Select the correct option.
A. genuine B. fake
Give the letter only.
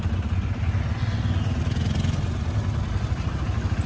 A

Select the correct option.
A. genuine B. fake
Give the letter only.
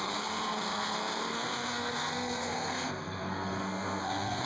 B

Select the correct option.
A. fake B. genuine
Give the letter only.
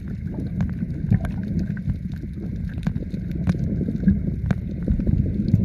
B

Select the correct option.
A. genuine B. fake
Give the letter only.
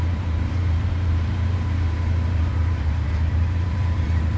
B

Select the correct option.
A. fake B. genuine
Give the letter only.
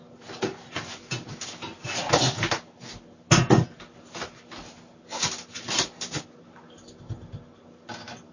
B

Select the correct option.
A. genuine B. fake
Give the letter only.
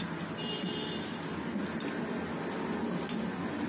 A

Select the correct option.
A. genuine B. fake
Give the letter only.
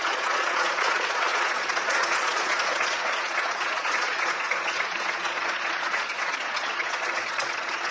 B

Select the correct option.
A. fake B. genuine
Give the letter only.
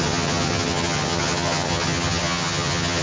A